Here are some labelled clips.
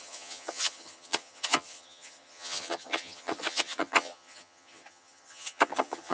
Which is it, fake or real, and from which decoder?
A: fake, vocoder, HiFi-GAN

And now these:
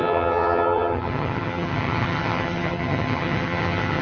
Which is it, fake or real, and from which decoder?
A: fake, vocoder, HiFi-GAN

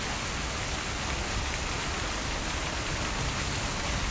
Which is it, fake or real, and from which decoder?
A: real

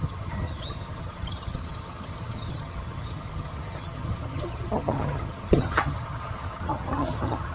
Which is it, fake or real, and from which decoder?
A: fake, vocoder, HiFi-GAN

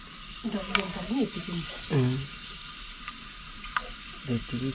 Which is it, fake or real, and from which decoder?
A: real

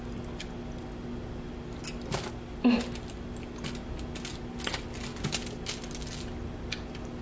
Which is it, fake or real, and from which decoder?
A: real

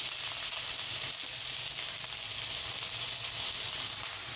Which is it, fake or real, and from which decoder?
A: real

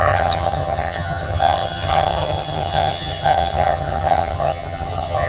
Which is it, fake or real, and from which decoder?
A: fake, vocoder, HiFi-GAN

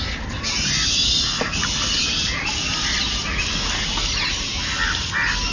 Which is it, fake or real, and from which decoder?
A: real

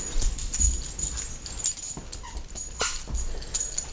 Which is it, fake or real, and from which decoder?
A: real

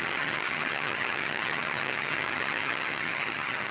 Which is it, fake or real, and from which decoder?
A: fake, vocoder, HiFi-GAN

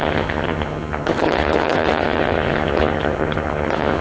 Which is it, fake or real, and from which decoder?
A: fake, vocoder, HiFi-GAN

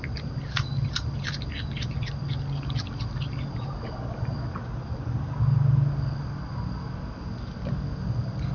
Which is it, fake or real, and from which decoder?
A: real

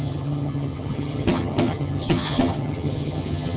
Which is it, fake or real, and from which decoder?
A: fake, vocoder, HiFi-GAN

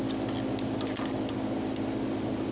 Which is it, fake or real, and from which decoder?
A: real